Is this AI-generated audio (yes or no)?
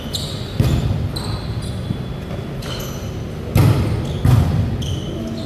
no